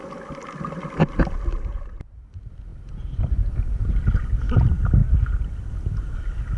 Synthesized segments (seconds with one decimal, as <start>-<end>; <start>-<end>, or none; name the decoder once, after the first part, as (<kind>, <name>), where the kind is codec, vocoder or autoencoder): 2.7-3.3 (vocoder, BigVGAN v2); 5.0-5.7